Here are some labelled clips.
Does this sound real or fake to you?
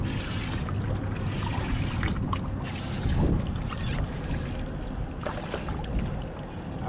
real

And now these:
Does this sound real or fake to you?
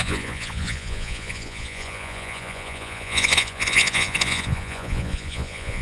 fake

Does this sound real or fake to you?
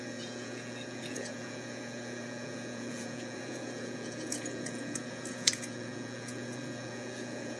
fake